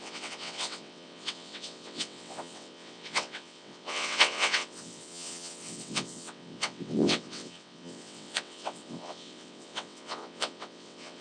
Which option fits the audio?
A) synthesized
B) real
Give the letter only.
A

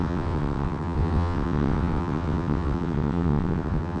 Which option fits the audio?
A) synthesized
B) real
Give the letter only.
A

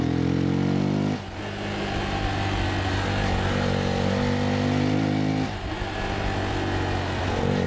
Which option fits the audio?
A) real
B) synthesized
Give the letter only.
A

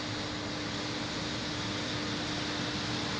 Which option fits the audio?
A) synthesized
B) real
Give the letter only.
B